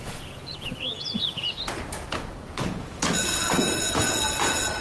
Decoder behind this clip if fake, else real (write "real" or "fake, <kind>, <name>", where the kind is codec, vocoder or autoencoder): fake, vocoder, Vocos